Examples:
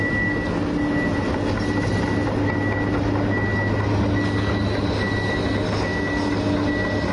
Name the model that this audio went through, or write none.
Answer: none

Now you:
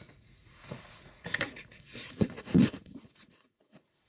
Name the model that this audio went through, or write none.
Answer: vocoder, Vocos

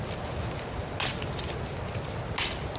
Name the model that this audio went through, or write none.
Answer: none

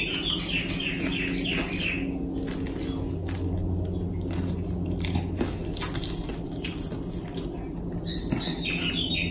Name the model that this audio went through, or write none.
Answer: none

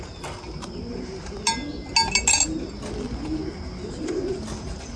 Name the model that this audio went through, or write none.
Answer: none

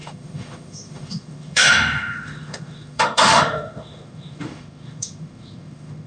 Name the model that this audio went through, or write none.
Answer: autoencoder, DAC-VAE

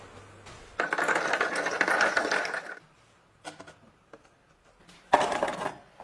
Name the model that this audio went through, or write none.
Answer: none